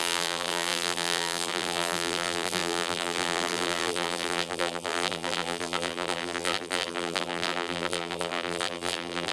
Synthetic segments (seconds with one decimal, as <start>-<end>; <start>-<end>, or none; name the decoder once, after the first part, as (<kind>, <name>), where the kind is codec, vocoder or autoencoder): 0.0-9.3 (vocoder, BigVGAN v2)